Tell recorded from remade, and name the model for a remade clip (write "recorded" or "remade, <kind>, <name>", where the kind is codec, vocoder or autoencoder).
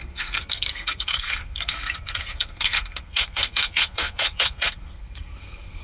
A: remade, codec, SNAC